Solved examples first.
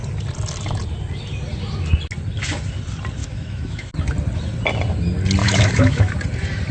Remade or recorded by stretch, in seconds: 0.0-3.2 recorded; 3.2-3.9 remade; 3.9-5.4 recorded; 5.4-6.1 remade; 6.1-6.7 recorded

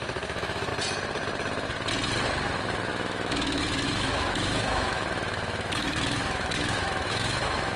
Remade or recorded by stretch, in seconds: 0.0-0.7 remade; 0.7-2.9 recorded; 2.9-7.8 remade

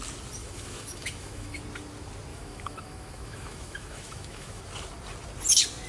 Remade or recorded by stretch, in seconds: 0.0-0.4 recorded; 0.4-1.6 remade; 1.6-2.3 recorded; 2.3-4.6 remade; 4.6-5.9 recorded

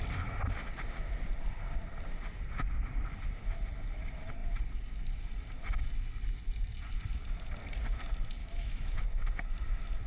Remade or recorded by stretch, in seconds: 0.0-8.4 recorded; 8.4-9.0 remade; 9.0-10.1 recorded

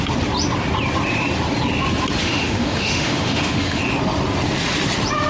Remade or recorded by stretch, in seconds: 0.0-2.2 recorded; 2.2-3.8 remade; 3.8-5.3 recorded